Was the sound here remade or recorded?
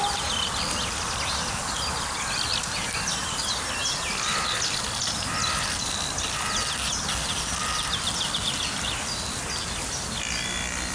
recorded